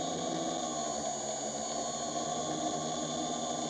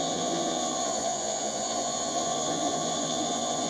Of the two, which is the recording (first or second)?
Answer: first